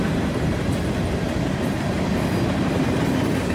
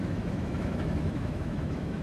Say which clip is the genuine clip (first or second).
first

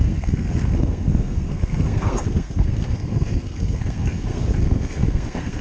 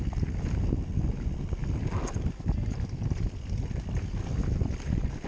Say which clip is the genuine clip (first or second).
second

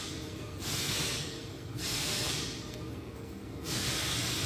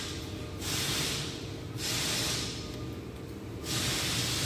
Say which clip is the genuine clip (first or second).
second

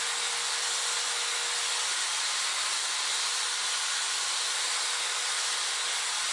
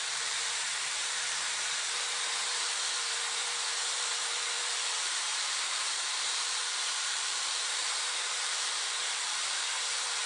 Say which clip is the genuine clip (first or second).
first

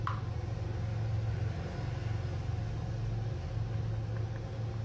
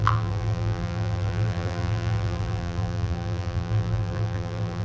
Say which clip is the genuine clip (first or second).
first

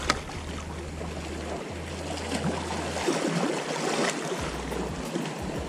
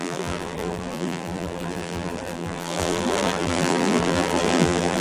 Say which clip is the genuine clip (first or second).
first